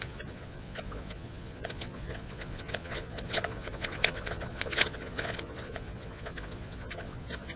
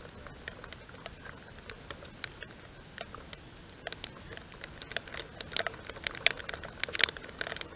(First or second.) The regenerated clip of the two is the first